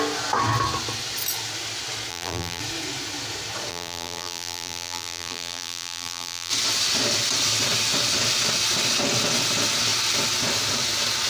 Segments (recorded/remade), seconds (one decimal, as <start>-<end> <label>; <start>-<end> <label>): 0.0-2.1 recorded; 2.1-2.6 remade; 2.6-3.7 recorded; 3.7-6.5 remade; 6.5-11.3 recorded